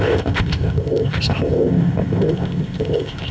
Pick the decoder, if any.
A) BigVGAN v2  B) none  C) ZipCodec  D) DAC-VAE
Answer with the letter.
C